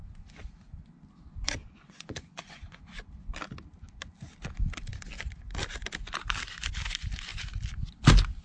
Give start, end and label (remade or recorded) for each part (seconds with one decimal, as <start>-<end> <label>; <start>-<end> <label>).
0.0-1.6 recorded; 1.6-2.8 remade; 2.8-8.4 recorded

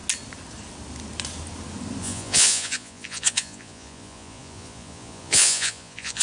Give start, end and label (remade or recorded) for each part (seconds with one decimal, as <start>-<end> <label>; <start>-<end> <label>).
0.0-2.0 recorded; 2.0-6.2 remade

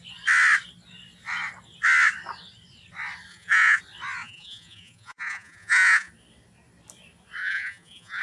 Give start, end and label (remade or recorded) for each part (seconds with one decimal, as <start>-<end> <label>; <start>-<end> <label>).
0.0-3.3 recorded; 3.3-3.8 remade; 3.8-4.2 recorded; 4.2-6.1 remade; 6.1-7.4 recorded; 7.4-8.2 remade

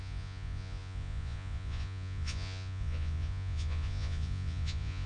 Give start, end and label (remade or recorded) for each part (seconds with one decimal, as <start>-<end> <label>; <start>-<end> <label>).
0.0-5.1 remade

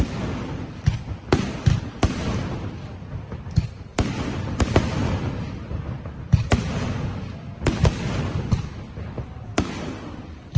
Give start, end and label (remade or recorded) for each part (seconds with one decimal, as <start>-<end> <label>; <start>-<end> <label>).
0.0-10.6 recorded